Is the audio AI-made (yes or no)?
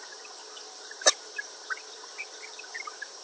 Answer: yes